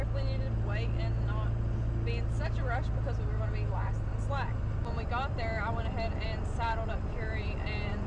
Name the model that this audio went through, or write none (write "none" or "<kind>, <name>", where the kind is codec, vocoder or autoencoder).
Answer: none